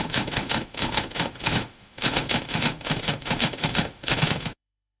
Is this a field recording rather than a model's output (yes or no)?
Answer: no